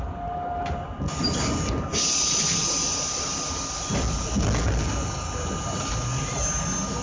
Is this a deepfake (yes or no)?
no